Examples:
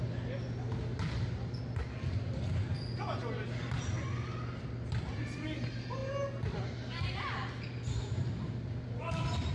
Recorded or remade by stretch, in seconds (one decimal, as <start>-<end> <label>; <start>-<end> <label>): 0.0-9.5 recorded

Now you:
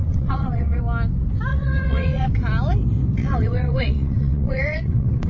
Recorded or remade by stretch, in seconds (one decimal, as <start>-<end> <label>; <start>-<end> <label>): 0.0-0.8 remade; 0.8-1.5 recorded; 1.5-2.3 remade; 2.3-3.2 recorded; 3.2-5.3 remade

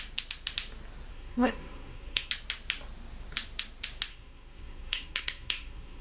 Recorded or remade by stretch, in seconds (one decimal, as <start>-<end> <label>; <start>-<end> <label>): 0.0-1.1 recorded; 1.1-2.3 remade; 2.3-4.1 recorded; 4.1-6.0 remade

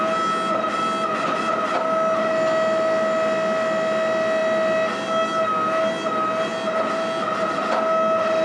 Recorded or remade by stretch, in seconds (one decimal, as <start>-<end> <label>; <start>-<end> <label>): 0.0-8.4 recorded

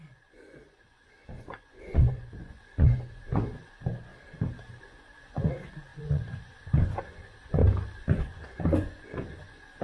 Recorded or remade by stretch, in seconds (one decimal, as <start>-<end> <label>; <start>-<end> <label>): 0.0-4.1 remade; 4.1-4.8 recorded; 4.8-7.6 remade; 7.6-8.2 recorded; 8.2-9.8 remade

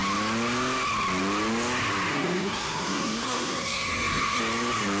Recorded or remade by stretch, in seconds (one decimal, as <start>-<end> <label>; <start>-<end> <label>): 0.0-2.1 recorded; 2.1-4.4 remade; 4.4-5.0 recorded